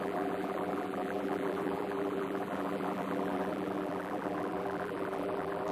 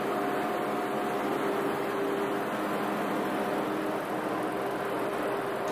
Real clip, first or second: second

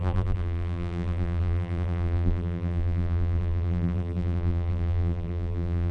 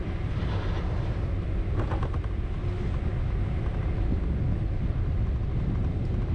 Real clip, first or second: second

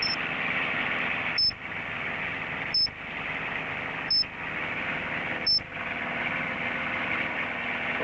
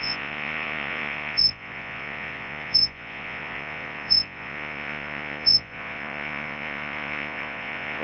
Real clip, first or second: first